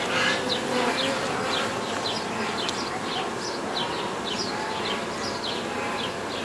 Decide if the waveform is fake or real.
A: real